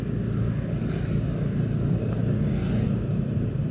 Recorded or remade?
recorded